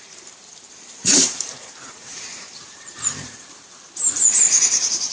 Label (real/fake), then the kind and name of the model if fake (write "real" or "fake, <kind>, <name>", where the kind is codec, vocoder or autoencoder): fake, vocoder, BigVGAN v2